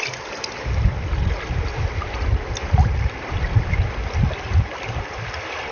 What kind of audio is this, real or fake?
real